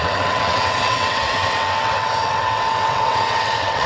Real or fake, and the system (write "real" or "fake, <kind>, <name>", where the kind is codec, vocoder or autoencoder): fake, vocoder, WaveNeXt